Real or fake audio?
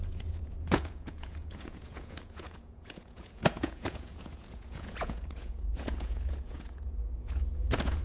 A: fake